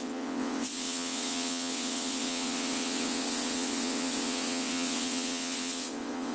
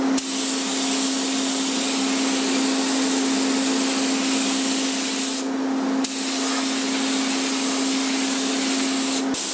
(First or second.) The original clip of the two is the second